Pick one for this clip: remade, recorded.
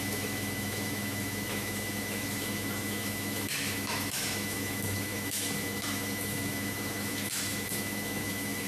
remade